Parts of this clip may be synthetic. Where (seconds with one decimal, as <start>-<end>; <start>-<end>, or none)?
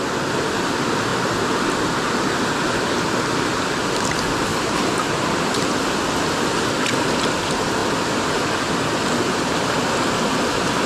4.5-5.9